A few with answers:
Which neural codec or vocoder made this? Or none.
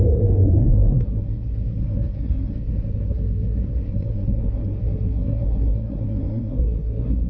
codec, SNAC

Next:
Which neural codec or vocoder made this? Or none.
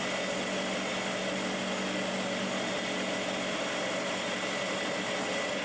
none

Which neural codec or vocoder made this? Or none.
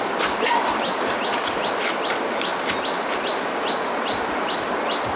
none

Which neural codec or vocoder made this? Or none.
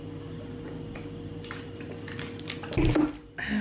none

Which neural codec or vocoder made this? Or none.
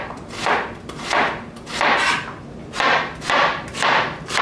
none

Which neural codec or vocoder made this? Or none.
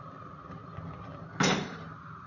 none